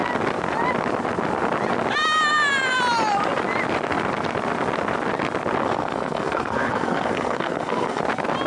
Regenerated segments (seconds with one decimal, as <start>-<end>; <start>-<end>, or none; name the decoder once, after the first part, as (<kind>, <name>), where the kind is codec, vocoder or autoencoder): 5.6-8.0 (codec, SNAC)